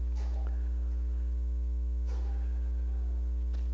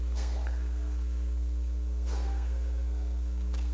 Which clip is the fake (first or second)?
second